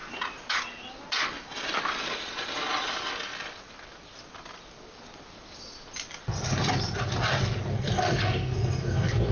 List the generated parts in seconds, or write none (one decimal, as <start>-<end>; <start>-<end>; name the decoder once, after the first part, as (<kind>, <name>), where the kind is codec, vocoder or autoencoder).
7.7-9.3 (codec, SNAC)